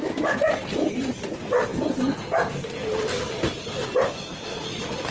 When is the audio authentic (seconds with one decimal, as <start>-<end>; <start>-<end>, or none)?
0.0-5.1